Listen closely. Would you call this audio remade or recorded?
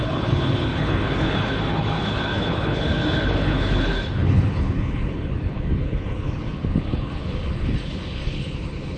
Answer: remade